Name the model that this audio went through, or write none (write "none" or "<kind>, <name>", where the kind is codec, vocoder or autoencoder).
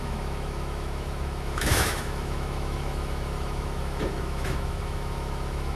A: autoencoder, DAC-VAE